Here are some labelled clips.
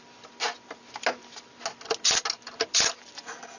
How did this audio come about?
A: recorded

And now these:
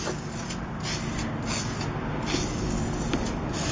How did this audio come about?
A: recorded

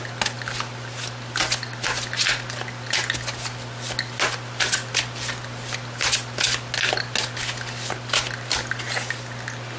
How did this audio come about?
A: recorded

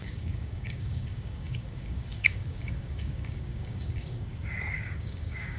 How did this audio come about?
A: remade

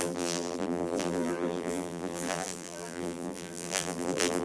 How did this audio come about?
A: remade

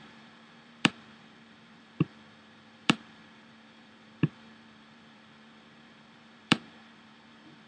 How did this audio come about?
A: remade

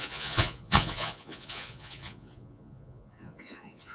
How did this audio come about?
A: remade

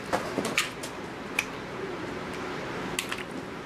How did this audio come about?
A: recorded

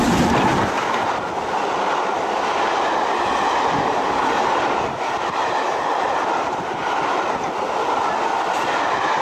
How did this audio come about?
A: recorded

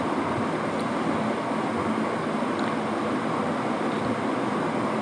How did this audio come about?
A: recorded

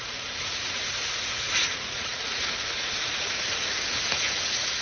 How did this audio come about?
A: remade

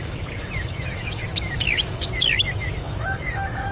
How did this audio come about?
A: remade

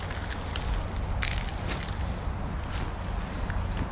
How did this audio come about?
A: recorded